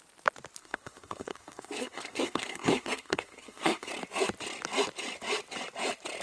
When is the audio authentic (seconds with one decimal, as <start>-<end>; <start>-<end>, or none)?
0.0-0.6; 3.9-6.2